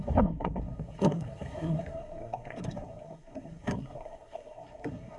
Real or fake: fake